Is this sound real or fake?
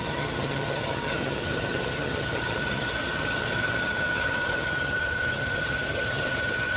fake